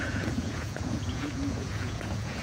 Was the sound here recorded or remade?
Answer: remade